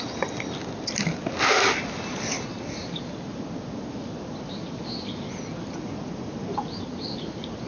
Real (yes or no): yes